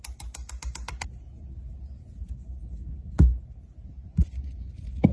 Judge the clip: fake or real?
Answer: real